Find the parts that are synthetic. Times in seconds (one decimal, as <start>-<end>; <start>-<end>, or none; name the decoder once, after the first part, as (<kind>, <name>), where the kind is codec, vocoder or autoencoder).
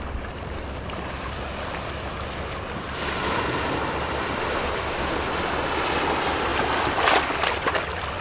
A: none